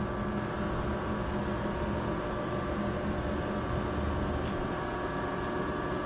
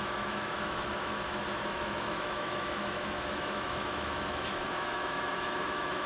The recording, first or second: first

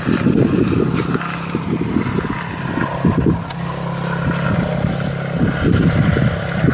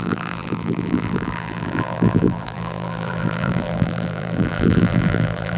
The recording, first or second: first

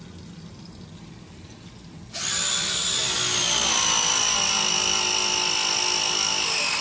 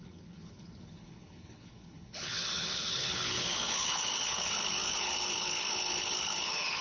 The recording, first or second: first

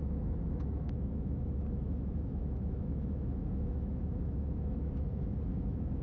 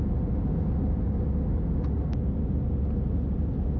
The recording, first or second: second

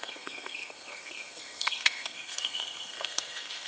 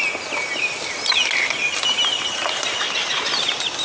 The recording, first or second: second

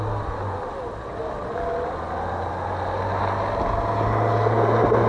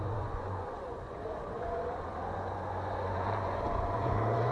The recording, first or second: first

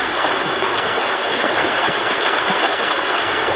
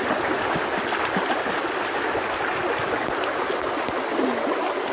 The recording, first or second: second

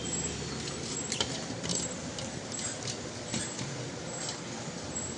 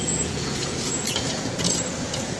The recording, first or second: first